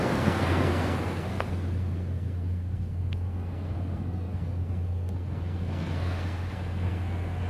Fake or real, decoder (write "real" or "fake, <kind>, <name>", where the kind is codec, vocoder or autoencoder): fake, codec, SNAC